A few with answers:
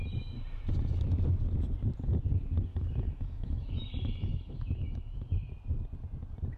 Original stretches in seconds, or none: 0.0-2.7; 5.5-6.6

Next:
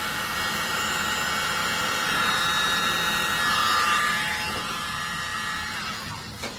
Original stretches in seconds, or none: 0.0-1.6; 2.4-6.6

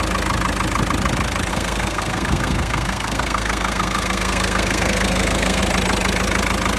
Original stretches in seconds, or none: 0.0-1.5; 5.6-6.8

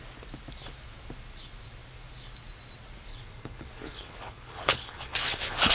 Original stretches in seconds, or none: 0.0-3.1

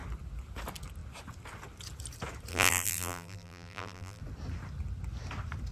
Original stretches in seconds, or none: 0.0-2.5; 4.2-5.7

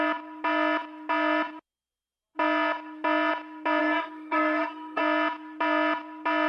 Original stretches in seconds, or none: 0.0-3.8; 5.0-6.5

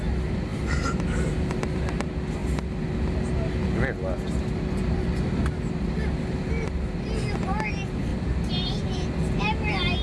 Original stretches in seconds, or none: 0.0-10.0

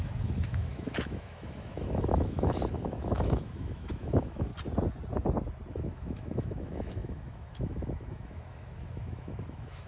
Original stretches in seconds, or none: 4.5-5.7